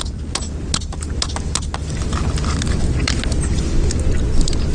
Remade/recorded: recorded